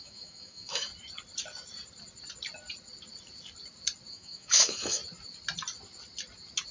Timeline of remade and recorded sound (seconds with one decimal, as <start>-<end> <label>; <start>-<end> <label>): 0.0-0.9 remade; 0.9-4.1 recorded; 4.1-5.0 remade; 5.0-6.7 recorded